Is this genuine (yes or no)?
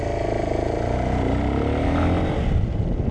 yes